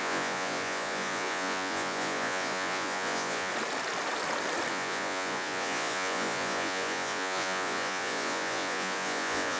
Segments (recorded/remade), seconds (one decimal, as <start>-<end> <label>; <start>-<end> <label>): 0.0-3.5 remade; 3.5-4.7 recorded; 4.7-9.6 remade

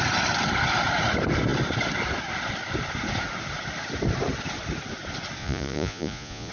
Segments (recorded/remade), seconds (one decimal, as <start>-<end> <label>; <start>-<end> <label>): 0.0-5.4 recorded; 5.4-6.5 remade

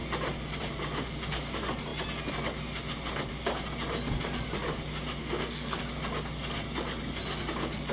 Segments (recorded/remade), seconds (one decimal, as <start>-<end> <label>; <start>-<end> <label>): 0.0-5.2 recorded; 5.2-5.8 remade; 5.8-7.9 recorded

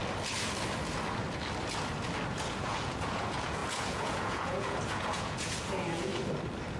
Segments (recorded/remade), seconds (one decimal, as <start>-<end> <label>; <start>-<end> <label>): 0.0-2.3 recorded; 2.3-6.1 remade; 6.1-6.8 recorded

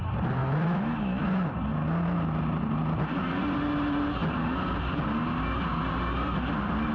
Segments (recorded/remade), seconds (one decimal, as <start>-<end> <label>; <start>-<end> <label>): 0.0-0.4 recorded; 0.4-1.2 remade; 1.2-6.9 recorded

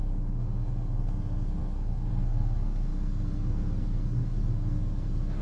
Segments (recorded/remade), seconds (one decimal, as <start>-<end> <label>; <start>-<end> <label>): 0.0-5.4 remade

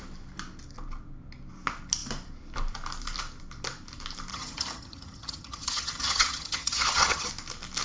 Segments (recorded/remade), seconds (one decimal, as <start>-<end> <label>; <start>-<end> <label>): 0.0-4.3 recorded; 4.3-7.3 remade; 7.3-7.8 recorded